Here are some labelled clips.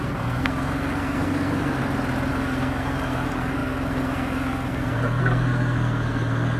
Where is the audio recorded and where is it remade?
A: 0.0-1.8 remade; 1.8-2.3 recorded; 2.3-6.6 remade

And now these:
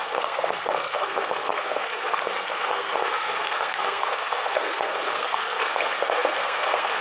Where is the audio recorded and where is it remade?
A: 0.0-7.0 remade

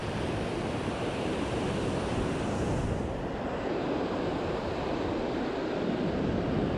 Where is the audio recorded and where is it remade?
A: 0.0-6.8 recorded

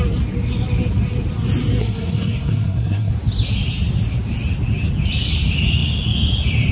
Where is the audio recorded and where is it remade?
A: 0.0-1.8 recorded; 1.8-3.1 remade; 3.1-6.7 recorded

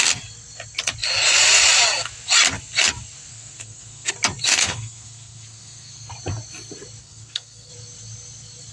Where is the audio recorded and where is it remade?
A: 0.0-3.3 recorded; 3.3-4.1 remade; 4.1-4.5 recorded; 4.5-6.1 remade; 6.1-7.0 recorded; 7.0-7.7 remade; 7.7-8.7 recorded

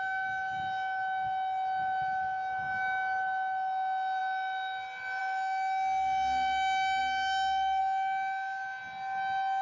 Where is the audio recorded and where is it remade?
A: 0.0-9.6 recorded